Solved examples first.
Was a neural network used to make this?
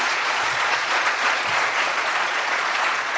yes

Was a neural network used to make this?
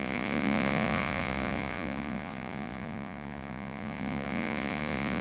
yes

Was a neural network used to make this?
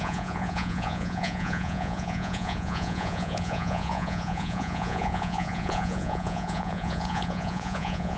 yes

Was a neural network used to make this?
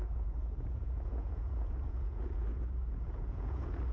yes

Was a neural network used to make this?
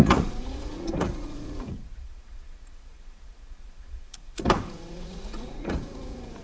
yes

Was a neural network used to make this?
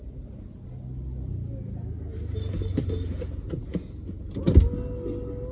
no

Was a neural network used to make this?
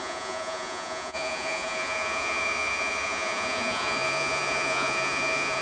yes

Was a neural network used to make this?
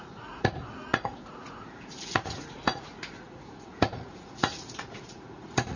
yes